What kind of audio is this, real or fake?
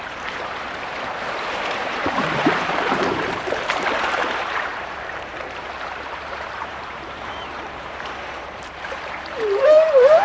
fake